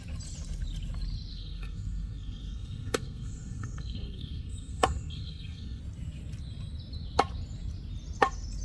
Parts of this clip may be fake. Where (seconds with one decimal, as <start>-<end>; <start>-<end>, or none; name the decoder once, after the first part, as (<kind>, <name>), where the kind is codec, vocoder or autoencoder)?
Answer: 1.3-5.8 (codec, SNAC)